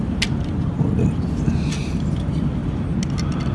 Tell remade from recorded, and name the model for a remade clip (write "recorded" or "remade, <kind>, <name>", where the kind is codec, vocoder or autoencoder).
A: recorded